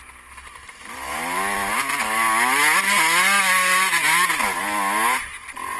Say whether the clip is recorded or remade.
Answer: recorded